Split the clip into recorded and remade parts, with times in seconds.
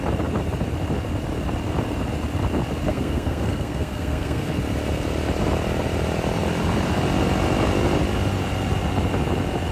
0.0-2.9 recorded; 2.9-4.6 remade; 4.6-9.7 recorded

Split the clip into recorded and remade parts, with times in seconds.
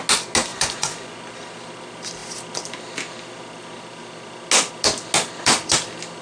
0.0-0.5 recorded; 0.5-1.2 remade; 1.2-6.2 recorded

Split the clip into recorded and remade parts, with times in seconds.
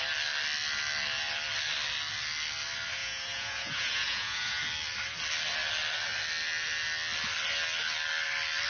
0.0-3.0 recorded; 3.0-4.6 remade; 4.6-8.7 recorded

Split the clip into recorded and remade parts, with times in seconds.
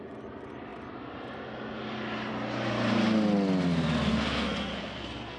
0.0-4.1 recorded; 4.1-5.4 remade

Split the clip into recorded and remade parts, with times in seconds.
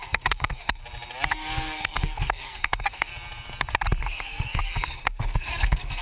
0.0-0.8 remade; 0.8-1.3 recorded; 1.3-3.1 remade; 3.1-4.0 recorded; 4.0-6.0 remade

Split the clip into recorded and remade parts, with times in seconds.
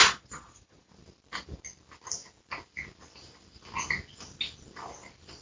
0.0-0.9 remade; 0.9-5.4 recorded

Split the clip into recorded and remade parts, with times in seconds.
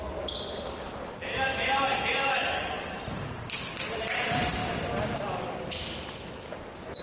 0.0-7.0 recorded